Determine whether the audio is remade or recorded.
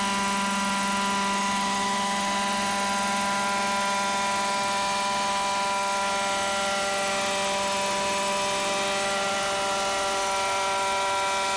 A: recorded